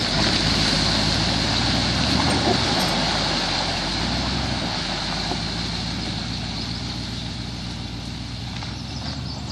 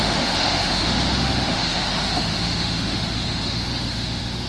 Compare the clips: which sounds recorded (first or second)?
first